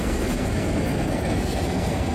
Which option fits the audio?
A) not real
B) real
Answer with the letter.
A